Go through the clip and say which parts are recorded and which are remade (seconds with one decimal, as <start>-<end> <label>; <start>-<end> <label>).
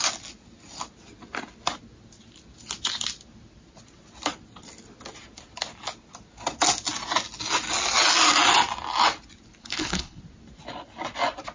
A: 0.0-9.6 recorded; 9.6-10.2 remade; 10.2-11.5 recorded